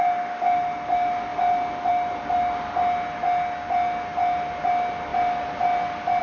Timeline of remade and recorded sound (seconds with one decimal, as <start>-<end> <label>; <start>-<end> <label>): 0.0-6.2 recorded